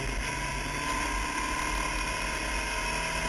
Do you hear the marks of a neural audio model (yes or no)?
no